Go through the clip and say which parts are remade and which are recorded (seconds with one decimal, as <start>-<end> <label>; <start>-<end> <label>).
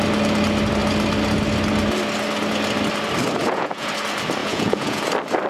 0.0-3.4 recorded; 3.4-3.9 remade; 3.9-4.4 recorded; 4.4-5.0 remade; 5.0-5.5 recorded